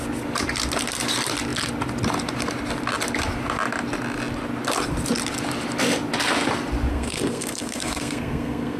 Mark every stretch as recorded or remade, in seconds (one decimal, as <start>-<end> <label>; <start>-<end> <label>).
0.0-6.9 recorded; 6.9-8.8 remade